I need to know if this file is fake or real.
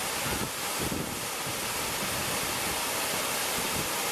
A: real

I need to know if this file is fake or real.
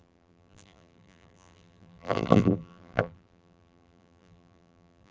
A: fake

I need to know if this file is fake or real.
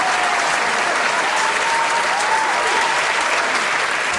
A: real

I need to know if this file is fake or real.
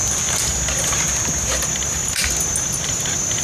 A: real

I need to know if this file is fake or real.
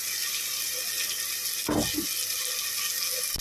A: real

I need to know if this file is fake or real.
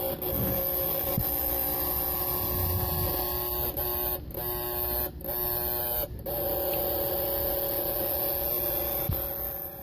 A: real